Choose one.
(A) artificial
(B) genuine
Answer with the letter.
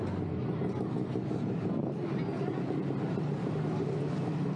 B